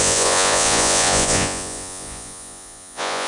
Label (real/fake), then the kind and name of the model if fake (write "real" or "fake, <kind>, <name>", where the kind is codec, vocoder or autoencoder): fake, vocoder, Vocos